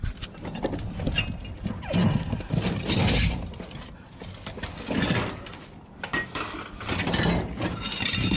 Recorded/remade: recorded